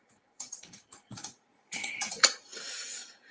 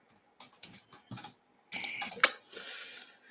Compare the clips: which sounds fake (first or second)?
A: first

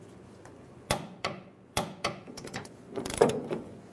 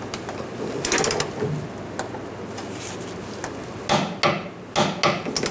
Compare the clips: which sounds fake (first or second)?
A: first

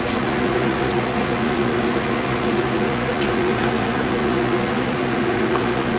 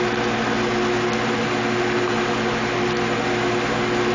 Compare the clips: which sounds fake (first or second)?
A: first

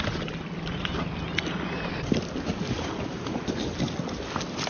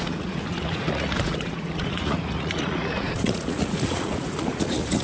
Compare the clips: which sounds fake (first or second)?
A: second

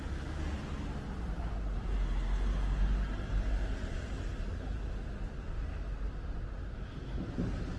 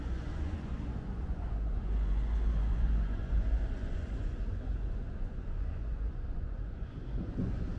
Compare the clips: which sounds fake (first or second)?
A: second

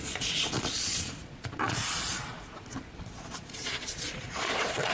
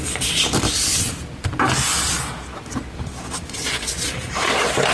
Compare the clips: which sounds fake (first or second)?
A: first